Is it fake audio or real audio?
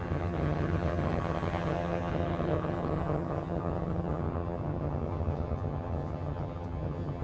fake